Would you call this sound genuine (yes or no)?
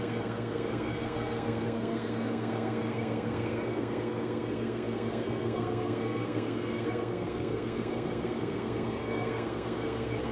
no